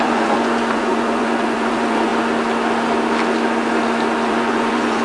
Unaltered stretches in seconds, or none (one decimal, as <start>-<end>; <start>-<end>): 2.1-4.3

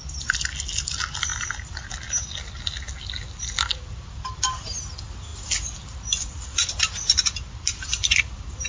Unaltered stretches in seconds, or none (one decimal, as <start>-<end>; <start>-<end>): 0.0-8.7